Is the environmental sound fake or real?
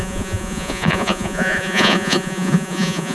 fake